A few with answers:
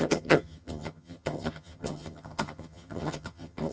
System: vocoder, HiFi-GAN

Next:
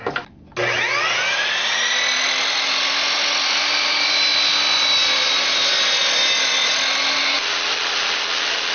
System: none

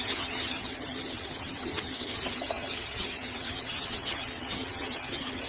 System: vocoder, HiFi-GAN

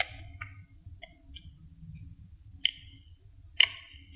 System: none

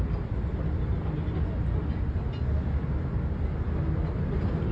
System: none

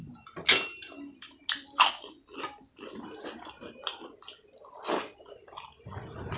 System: none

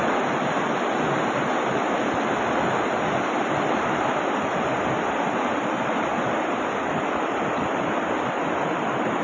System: none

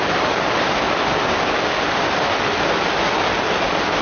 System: none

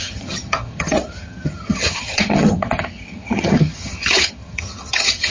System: vocoder, HiFi-GAN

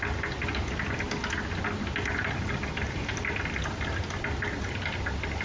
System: none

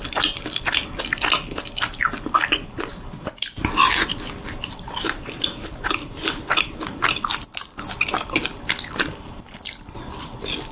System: none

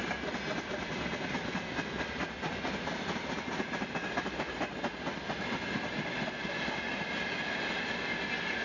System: none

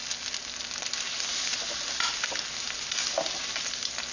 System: none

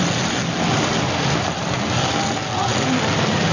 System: none